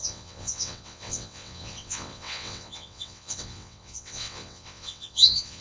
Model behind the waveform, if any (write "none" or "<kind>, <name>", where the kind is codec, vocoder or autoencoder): vocoder, WaveNeXt